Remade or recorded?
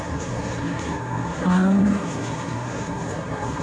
remade